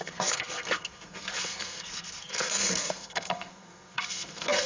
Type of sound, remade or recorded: remade